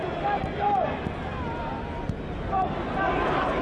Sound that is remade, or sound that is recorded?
recorded